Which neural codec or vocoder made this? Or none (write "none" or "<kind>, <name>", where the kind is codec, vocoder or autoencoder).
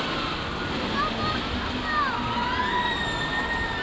none